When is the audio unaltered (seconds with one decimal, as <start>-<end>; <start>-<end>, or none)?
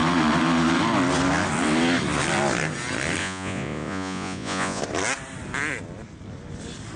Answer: 0.0-3.2; 4.8-7.0